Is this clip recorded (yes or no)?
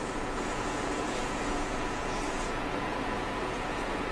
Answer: no